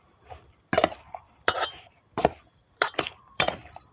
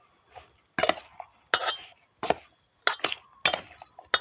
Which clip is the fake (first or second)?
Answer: first